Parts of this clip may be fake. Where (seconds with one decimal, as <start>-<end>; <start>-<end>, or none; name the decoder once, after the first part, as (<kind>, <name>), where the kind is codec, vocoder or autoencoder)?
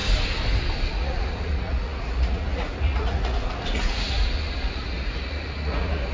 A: 0.9-6.1 (vocoder, Vocos)